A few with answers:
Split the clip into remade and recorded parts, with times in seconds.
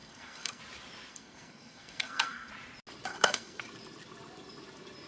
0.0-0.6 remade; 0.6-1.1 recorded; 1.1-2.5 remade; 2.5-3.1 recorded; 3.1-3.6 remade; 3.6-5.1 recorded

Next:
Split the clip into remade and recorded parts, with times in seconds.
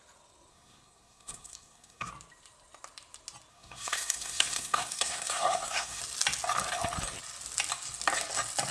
0.0-0.5 recorded; 0.5-2.1 remade; 2.1-3.5 recorded; 3.5-6.0 remade; 6.0-8.7 recorded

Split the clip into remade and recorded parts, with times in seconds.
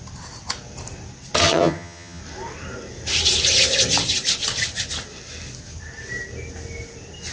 0.0-1.4 recorded; 1.4-2.2 remade; 2.2-7.3 recorded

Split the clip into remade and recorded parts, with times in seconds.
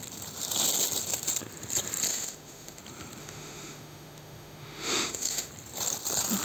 0.0-2.1 recorded; 2.1-2.8 remade; 2.8-3.2 recorded; 3.2-5.5 remade; 5.5-6.4 recorded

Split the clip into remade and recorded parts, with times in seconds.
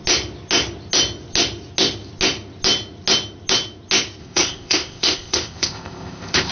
0.0-4.2 recorded; 4.2-6.5 remade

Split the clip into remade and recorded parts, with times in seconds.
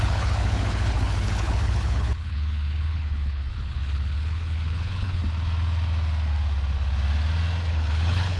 0.0-5.2 remade; 5.2-7.7 recorded; 7.7-8.4 remade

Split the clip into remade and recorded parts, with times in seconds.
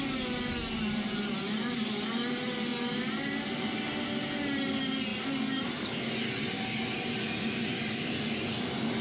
0.0-9.0 recorded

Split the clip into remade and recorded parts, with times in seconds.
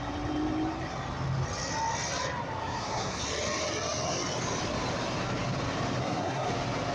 0.0-2.6 recorded; 2.6-3.2 remade; 3.2-6.0 recorded; 6.0-6.5 remade; 6.5-6.9 recorded